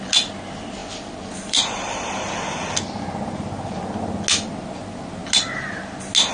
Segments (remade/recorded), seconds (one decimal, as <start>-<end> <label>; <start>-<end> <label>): 0.0-0.8 recorded; 0.8-2.3 remade; 2.3-6.3 recorded